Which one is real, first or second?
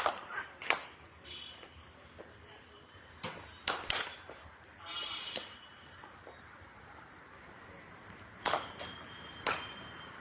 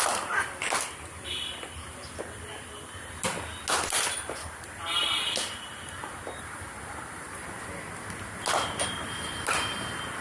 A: second